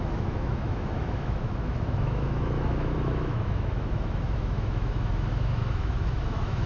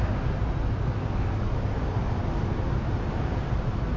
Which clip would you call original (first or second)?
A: second